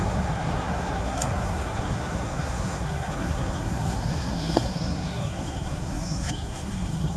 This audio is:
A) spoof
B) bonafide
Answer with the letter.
A